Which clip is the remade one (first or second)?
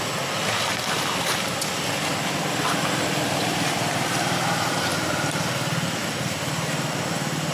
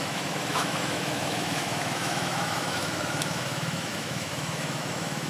second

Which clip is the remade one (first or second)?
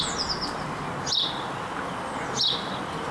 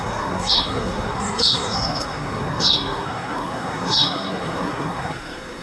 second